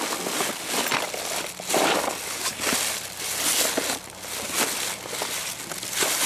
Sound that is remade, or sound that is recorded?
recorded